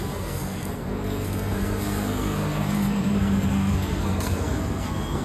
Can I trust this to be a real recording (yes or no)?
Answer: no